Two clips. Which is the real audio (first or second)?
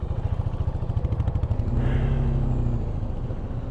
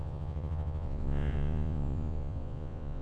first